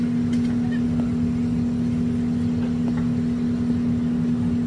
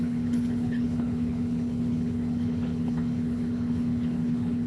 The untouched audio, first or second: first